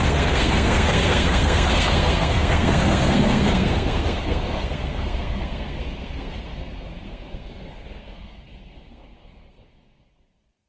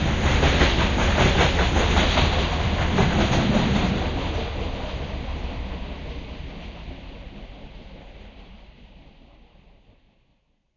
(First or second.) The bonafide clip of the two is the second